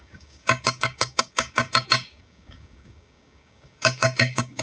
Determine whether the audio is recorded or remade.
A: remade